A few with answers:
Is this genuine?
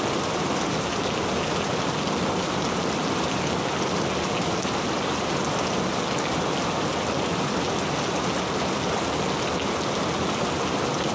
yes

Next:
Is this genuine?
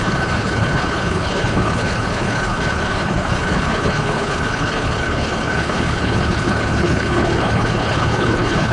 no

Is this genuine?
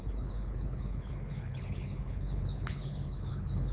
no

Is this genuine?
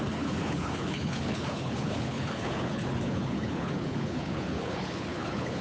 no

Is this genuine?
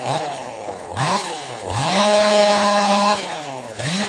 no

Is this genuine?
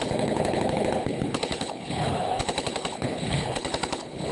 no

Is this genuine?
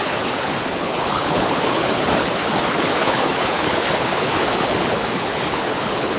no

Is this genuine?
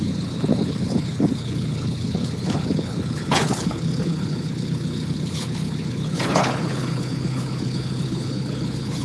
no